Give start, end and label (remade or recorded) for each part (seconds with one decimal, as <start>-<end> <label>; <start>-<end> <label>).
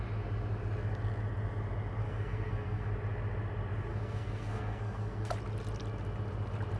0.0-2.0 recorded; 2.0-2.9 remade; 2.9-3.9 recorded; 3.9-5.3 remade; 5.3-6.8 recorded